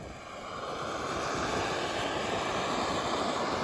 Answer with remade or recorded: recorded